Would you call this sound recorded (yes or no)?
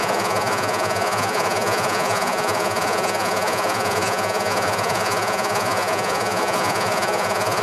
no